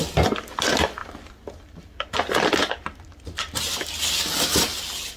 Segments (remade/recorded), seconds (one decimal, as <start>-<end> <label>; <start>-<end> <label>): 0.0-1.0 recorded; 1.0-4.1 remade; 4.1-5.2 recorded